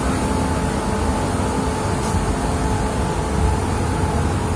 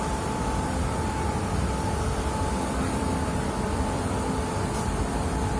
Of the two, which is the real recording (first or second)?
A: first